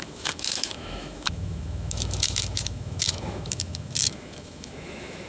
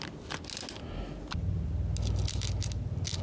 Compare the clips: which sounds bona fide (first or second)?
second